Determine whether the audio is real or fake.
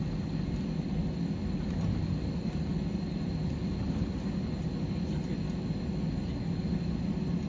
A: real